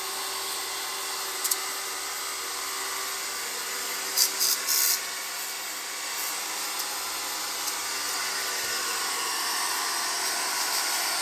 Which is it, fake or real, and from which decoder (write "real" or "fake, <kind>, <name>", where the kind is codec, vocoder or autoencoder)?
real